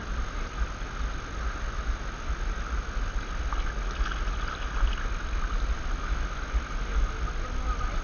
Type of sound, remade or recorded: recorded